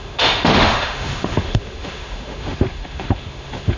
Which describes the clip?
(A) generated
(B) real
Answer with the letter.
A